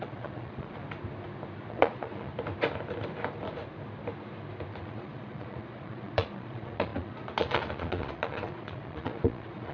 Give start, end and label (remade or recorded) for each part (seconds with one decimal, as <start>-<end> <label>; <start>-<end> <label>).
0.0-0.8 remade; 0.8-1.7 recorded; 1.7-2.3 remade; 2.3-4.8 recorded; 4.8-9.7 remade